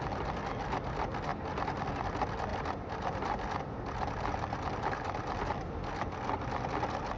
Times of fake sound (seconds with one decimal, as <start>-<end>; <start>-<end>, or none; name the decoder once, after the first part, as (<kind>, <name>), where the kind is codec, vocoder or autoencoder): none